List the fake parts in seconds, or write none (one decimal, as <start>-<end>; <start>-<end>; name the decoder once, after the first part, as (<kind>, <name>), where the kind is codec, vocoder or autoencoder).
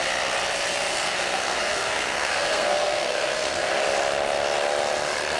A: 0.9-3.7 (codec, SNAC)